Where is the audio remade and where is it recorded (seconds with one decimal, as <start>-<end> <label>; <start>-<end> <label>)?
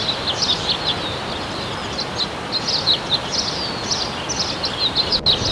0.0-5.5 recorded